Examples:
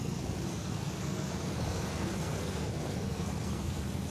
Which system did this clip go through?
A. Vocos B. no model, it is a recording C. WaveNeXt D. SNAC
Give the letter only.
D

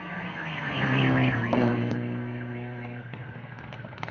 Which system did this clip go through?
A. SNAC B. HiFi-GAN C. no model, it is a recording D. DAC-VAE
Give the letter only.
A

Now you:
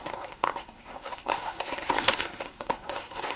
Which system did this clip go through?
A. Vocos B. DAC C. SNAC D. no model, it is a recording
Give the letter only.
C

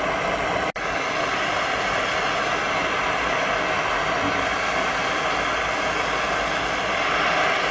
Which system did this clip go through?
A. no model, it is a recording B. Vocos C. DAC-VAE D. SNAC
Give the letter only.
A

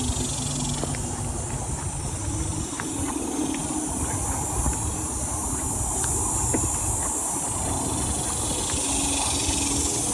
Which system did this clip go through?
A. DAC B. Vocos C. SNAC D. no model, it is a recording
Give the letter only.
D